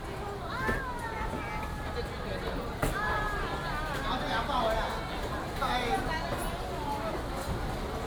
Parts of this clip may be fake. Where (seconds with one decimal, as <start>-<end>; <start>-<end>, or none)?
none